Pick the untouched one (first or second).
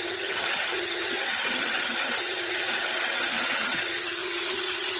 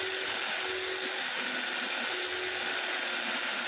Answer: second